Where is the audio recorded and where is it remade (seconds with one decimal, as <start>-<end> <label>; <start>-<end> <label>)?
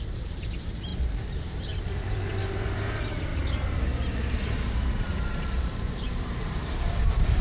0.0-3.3 remade; 3.3-4.3 recorded; 4.3-7.4 remade